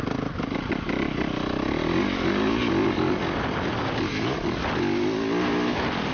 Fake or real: real